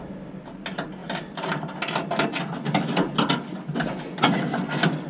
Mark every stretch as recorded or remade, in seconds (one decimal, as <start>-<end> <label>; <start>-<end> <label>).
0.0-5.1 recorded